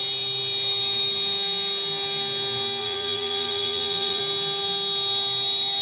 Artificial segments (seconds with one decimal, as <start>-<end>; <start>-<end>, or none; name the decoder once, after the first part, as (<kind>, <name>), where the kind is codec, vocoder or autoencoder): 2.8-4.2 (vocoder, BigVGAN v2)